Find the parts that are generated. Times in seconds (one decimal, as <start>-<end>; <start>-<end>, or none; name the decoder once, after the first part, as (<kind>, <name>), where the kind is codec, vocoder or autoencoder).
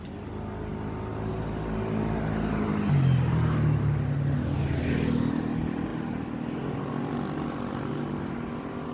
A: none